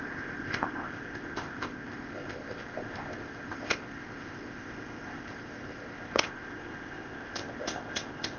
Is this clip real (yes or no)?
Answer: no